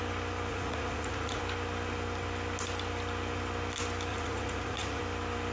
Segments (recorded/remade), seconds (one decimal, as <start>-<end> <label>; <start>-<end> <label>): 0.0-0.5 recorded; 0.5-1.4 remade; 1.4-4.1 recorded; 4.1-5.0 remade; 5.0-5.5 recorded